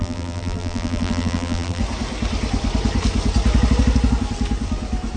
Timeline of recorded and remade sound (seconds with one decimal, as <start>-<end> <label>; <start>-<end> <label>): 0.0-1.8 remade; 1.8-5.2 recorded